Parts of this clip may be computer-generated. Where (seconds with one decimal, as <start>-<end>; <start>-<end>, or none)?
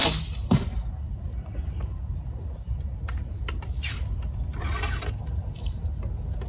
none